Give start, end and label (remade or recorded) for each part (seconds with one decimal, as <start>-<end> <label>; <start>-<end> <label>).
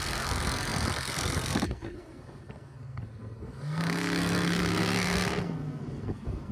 0.0-6.5 remade